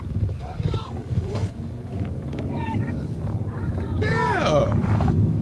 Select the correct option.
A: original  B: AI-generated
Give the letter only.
B